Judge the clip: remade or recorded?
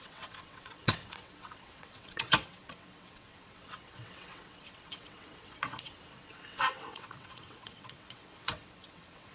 remade